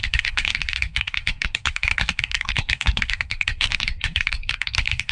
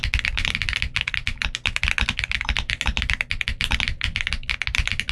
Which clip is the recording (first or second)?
second